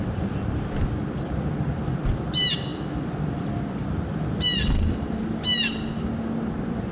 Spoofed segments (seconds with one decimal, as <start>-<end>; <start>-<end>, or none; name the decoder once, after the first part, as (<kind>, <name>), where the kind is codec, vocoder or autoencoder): none